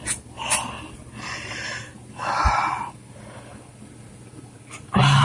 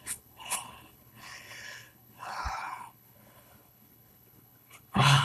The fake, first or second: second